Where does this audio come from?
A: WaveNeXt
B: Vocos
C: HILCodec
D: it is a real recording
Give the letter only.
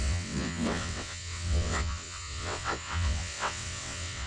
A